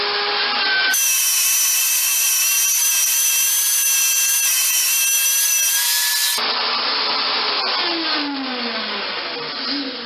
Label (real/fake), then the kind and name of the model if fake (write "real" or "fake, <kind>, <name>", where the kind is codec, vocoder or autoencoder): real